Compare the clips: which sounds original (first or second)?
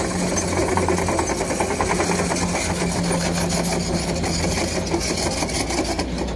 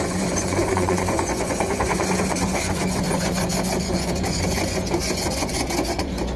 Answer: first